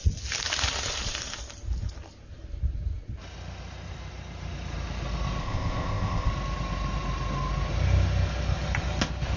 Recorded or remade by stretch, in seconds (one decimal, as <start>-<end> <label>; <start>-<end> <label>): 0.0-5.4 recorded; 5.4-6.3 remade; 6.3-9.4 recorded